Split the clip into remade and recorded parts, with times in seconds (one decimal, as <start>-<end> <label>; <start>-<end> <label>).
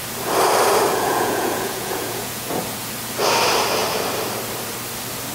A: 0.0-0.9 recorded; 0.9-2.9 remade; 2.9-5.3 recorded